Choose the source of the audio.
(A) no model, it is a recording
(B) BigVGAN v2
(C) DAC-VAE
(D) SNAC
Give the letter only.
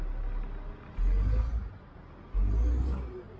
A